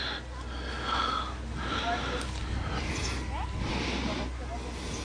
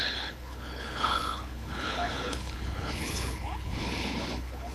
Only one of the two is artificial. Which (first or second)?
second